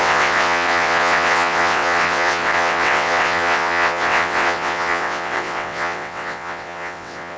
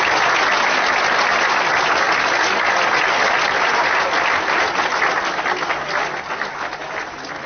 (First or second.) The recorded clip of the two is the second